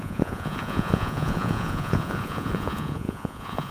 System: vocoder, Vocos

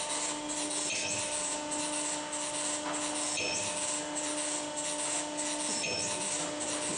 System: none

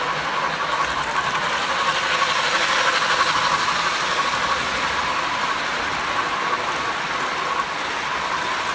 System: none